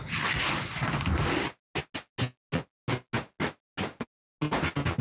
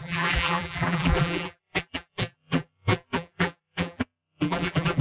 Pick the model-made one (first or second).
second